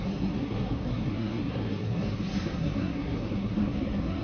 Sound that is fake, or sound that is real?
fake